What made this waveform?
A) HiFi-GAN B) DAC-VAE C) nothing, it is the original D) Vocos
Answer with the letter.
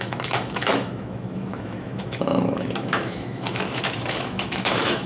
B